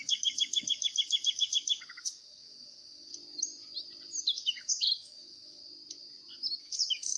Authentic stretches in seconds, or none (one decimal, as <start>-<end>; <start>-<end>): 3.1-4.6; 5.6-6.6